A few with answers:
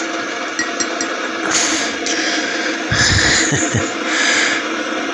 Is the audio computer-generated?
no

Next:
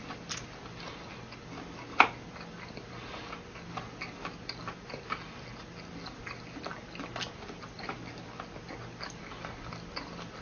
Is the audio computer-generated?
no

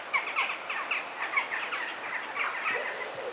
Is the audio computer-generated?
no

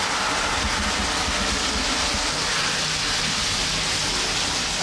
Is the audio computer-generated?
no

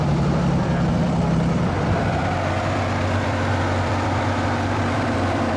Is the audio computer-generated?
yes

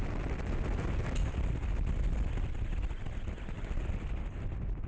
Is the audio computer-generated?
no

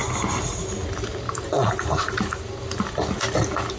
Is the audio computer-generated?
no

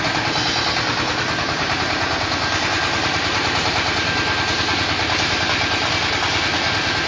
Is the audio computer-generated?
no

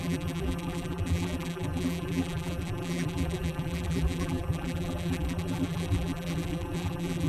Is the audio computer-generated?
yes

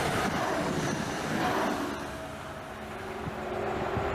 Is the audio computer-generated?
no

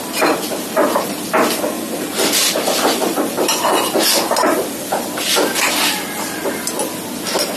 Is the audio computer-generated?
no